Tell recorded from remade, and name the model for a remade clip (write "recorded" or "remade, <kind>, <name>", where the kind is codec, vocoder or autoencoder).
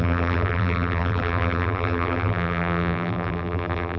remade, vocoder, BigVGAN v2